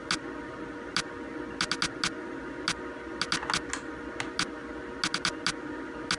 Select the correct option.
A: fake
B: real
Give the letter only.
B